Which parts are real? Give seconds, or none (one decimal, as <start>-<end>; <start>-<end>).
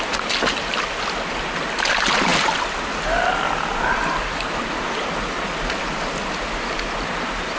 0.0-7.6